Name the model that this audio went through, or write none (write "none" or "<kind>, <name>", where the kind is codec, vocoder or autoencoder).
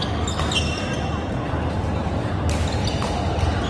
none